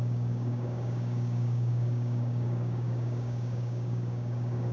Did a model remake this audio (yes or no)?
yes